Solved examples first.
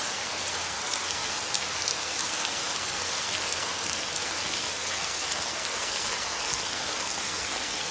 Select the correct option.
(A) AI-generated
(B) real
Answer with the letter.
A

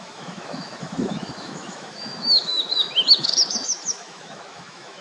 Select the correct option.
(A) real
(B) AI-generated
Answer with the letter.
B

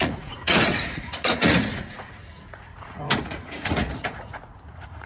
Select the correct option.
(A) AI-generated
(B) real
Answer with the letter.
A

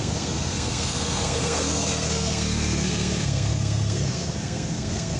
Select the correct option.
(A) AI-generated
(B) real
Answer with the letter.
A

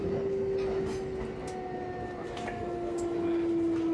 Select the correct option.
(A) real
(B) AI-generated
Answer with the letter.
A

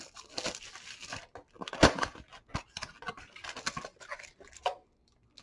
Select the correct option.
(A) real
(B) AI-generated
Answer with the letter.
A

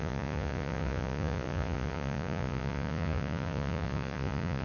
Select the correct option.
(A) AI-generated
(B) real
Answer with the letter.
A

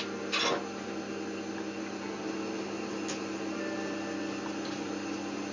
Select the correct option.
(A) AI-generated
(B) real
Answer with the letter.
B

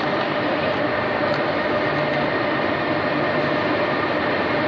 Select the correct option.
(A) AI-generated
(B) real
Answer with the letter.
B